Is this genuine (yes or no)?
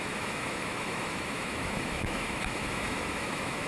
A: no